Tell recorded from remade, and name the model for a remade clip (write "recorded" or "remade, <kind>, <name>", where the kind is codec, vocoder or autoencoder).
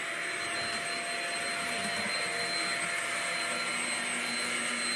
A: recorded